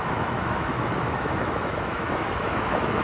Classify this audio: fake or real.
fake